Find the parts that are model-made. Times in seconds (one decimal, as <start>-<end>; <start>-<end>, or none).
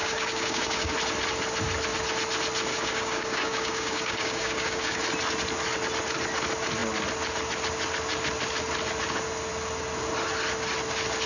0.0-0.9; 2.7-5.0